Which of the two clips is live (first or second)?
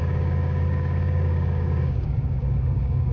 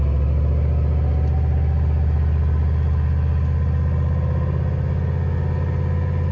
second